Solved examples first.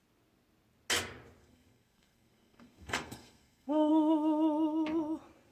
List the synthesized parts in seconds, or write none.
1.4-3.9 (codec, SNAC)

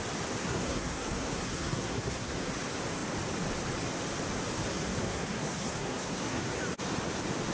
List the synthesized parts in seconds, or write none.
0.4-2.5 (codec, SNAC); 4.7-6.6

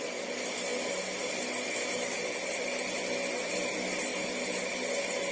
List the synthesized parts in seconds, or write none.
none

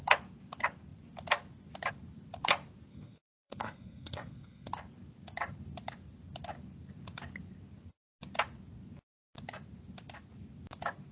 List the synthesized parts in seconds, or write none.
2.9-4.7 (codec, SNAC)

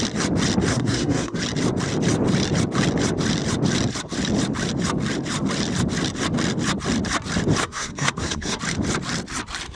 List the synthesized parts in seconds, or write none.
0.7-1.4 (codec, SNAC); 7.6-8.6

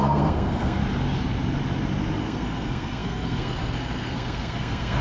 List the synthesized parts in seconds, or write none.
0.0-0.8 (codec, SNAC); 2.2-5.0

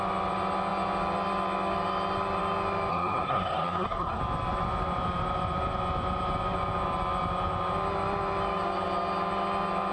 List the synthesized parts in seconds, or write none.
2.9-4.2 (codec, SNAC)

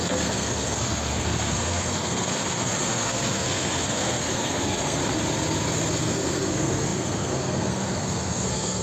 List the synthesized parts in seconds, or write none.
0.0-5.0 (codec, SNAC); 6.0-8.8